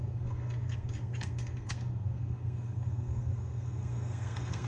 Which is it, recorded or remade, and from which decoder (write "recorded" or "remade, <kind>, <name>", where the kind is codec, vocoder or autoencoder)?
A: remade, codec, SNAC